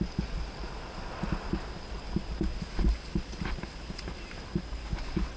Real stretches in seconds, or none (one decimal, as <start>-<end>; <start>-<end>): 0.0-4.8